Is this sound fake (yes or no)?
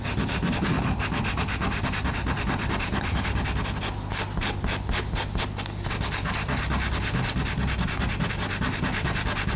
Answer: no